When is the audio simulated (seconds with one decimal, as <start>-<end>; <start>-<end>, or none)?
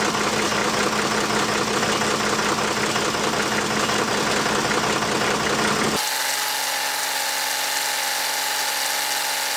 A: none